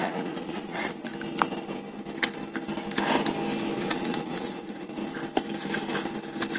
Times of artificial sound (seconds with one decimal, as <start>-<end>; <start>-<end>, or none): 0.0-1.1; 3.8-5.0